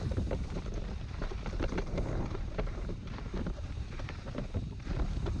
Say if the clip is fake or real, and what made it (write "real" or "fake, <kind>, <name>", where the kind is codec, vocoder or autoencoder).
fake, vocoder, BigVGAN v2